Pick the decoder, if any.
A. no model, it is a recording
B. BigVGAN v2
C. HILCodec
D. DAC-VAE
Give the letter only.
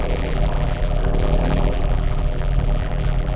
B